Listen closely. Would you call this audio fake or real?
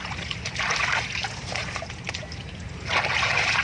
real